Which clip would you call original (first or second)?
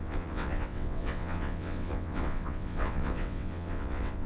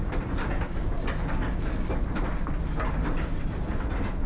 second